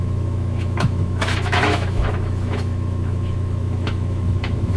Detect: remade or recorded remade